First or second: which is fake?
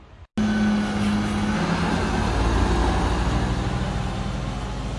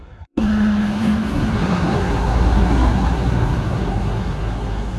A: second